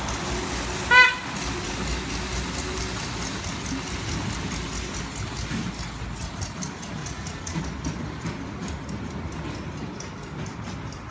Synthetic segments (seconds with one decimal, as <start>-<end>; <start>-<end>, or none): 7.0-7.6